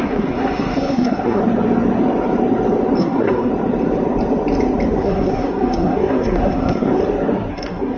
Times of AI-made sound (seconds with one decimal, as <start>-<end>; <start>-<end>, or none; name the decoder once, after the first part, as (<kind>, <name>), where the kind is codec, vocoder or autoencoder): 0.0-1.4 (codec, SNAC); 3.0-3.5; 5.0-7.0; 7.5-8.0